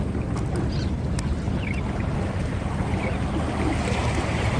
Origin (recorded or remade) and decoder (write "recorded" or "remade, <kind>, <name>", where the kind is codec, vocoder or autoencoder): recorded